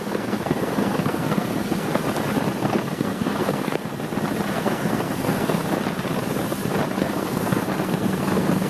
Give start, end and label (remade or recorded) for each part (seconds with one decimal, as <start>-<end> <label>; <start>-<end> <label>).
0.0-2.0 remade; 2.0-2.6 recorded; 2.6-3.9 remade; 3.9-4.5 recorded; 4.5-5.6 remade; 5.6-7.0 recorded; 7.0-8.7 remade